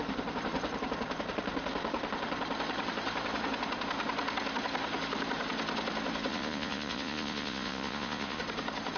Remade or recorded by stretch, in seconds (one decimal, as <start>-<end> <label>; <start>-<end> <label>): 0.0-6.3 recorded; 6.3-8.4 remade; 8.4-9.0 recorded